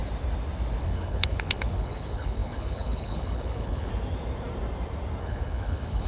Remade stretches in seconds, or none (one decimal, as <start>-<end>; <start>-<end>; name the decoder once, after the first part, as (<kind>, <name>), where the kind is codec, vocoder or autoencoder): 0.8-3.9 (codec, HILCodec); 5.2-6.1